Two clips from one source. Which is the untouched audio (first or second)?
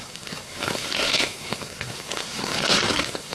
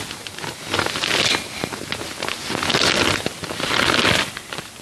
second